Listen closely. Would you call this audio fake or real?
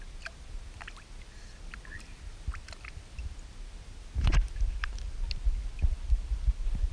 real